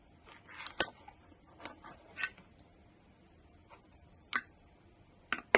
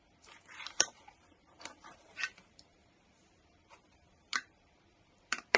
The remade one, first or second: second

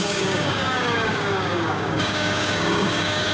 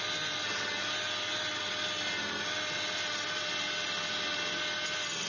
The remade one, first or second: first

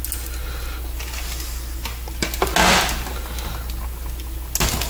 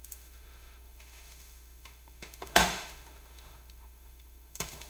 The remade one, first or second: second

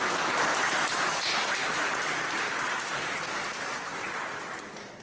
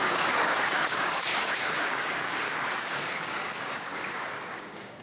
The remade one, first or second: second